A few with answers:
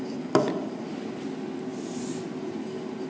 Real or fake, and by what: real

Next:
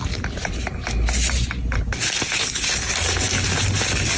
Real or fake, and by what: real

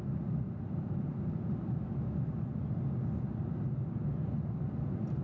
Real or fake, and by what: real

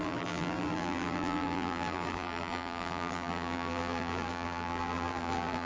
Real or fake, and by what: fake, vocoder, BigVGAN v2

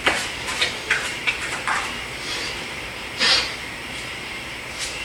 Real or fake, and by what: fake, vocoder, BigVGAN v2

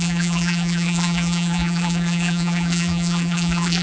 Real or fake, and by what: fake, vocoder, BigVGAN v2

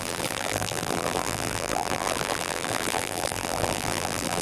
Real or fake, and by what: fake, vocoder, BigVGAN v2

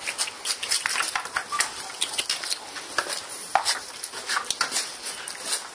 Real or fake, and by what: real